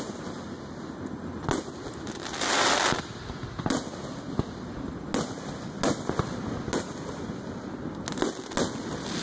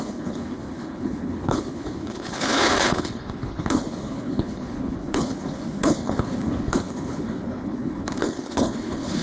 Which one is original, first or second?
first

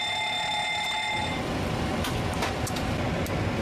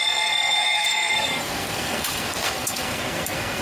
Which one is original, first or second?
first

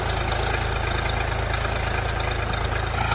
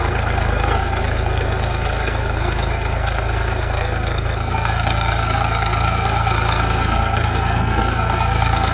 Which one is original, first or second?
first